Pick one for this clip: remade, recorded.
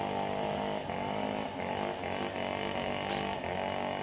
recorded